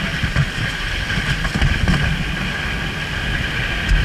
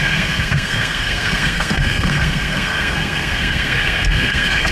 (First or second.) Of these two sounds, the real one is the first